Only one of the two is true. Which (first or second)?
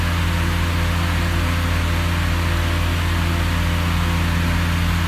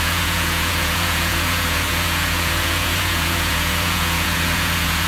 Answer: first